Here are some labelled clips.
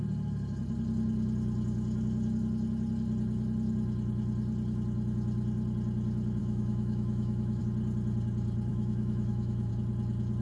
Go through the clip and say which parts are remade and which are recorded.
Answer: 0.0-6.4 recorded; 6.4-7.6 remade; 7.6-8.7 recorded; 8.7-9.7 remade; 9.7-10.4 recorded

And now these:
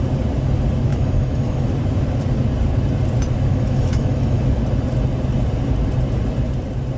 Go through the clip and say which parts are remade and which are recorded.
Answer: 0.0-0.9 recorded; 0.9-1.7 remade; 1.7-3.5 recorded; 3.5-4.4 remade; 4.4-7.0 recorded

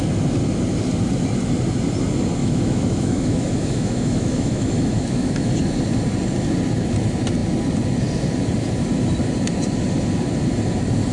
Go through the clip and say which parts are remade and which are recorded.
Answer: 0.0-2.4 recorded; 2.4-5.5 remade; 5.5-11.1 recorded

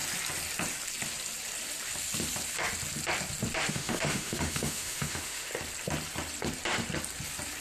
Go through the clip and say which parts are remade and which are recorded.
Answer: 0.0-3.7 recorded; 3.7-5.5 remade; 5.5-7.6 recorded

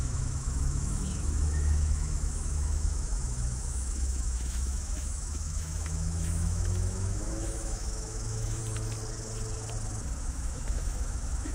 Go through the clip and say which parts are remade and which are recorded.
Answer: 0.0-8.6 remade; 8.6-10.2 recorded; 10.2-11.5 remade